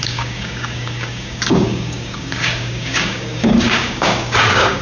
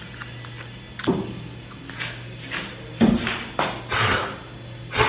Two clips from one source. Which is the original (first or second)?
second